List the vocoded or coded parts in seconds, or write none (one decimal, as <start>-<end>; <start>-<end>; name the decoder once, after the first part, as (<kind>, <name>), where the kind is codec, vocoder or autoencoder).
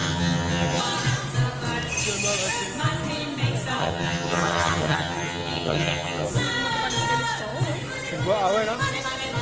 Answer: 0.0-0.8 (vocoder, HiFi-GAN); 3.8-6.3